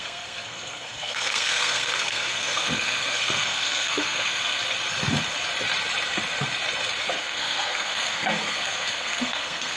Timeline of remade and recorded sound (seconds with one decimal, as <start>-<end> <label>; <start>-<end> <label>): 0.0-4.6 remade; 4.6-7.2 recorded; 7.2-9.8 remade